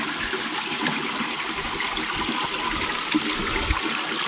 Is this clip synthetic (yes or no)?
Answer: no